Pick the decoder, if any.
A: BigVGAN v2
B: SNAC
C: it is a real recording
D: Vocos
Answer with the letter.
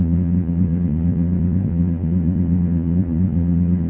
D